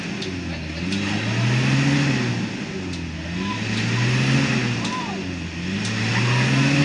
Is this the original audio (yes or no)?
yes